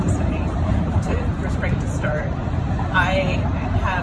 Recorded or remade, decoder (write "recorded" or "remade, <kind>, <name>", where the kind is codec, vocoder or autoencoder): remade, vocoder, BigVGAN v2